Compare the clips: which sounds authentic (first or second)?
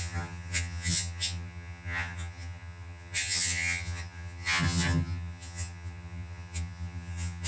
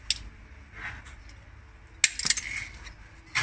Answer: second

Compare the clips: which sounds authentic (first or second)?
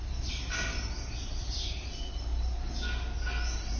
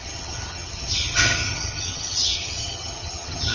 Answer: first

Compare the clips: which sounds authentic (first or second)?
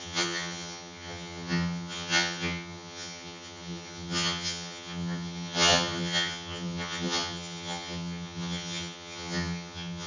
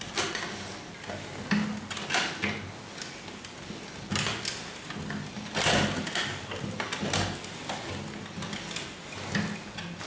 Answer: second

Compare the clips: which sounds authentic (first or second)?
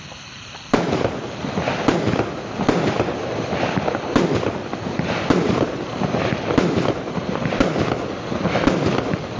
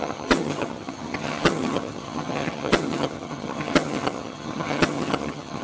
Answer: first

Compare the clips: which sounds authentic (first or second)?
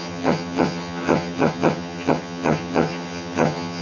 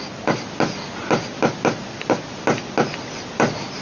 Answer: second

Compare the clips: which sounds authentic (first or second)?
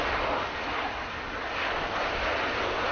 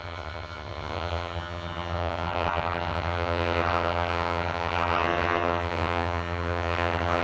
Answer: first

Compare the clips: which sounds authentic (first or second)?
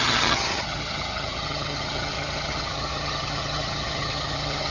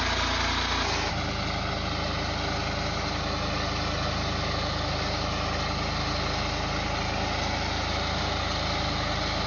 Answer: second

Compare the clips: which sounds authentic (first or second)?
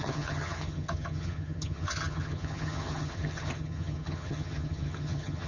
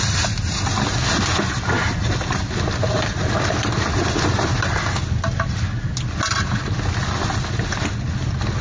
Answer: second